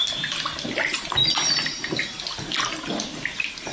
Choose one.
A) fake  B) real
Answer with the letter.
B